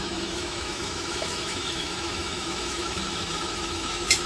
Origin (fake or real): fake